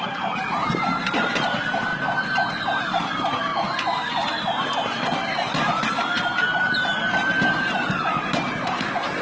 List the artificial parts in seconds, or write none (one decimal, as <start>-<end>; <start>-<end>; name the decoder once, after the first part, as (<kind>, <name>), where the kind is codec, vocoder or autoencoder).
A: 0.0-1.9 (vocoder, BigVGAN v2); 2.8-3.5; 6.0-9.2